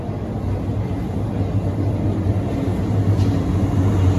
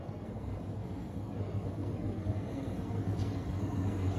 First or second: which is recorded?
first